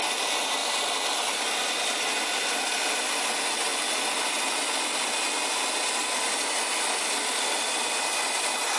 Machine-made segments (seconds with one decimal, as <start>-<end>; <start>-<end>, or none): none